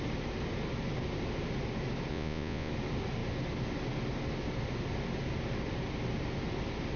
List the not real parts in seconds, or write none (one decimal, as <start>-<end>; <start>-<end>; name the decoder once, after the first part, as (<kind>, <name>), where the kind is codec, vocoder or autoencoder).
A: 2.1-2.7 (vocoder, Vocos)